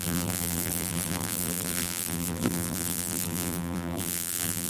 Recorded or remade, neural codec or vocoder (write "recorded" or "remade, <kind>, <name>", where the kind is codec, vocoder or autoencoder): remade, vocoder, BigVGAN v2